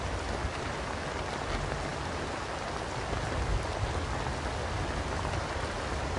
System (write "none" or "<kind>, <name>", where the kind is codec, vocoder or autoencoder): none